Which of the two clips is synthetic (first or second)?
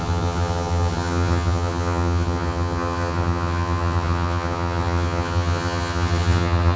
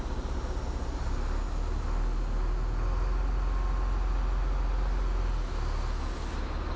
first